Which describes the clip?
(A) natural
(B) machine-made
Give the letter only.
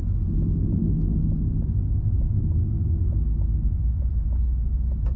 A